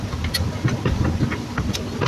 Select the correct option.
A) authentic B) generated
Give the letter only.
A